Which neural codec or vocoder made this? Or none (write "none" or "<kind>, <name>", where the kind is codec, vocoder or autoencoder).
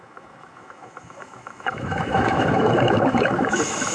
autoencoder, DAC-VAE